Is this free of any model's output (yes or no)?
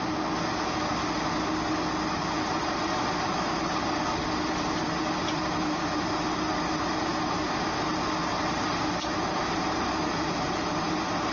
yes